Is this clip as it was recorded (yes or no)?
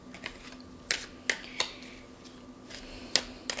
yes